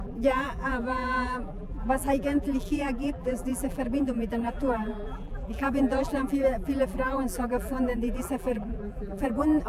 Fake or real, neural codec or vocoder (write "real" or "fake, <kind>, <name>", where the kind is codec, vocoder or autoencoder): fake, vocoder, BigVGAN v2